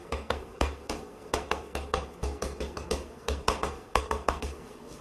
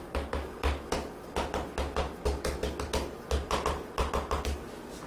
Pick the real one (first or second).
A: second